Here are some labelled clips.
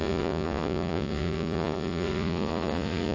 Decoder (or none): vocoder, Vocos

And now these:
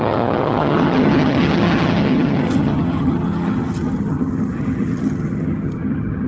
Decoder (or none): vocoder, HiFi-GAN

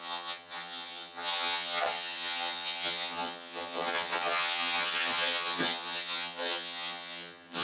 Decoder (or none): vocoder, HiFi-GAN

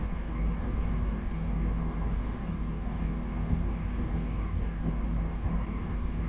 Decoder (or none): codec, DAC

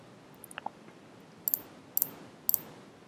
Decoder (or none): none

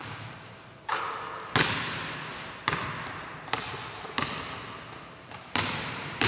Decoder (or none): none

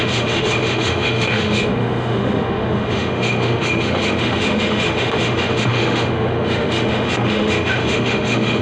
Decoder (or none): autoencoder, DAC-VAE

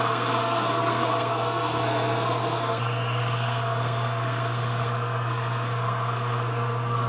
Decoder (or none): codec, SNAC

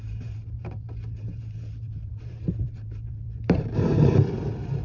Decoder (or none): vocoder, BigVGAN v2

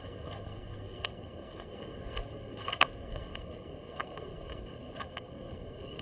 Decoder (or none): codec, SNAC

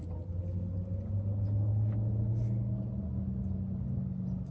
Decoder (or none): none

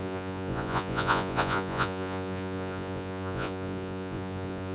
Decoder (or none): vocoder, Vocos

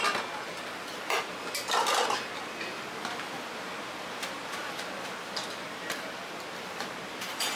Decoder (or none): none